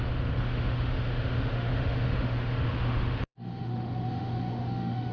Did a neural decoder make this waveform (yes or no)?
yes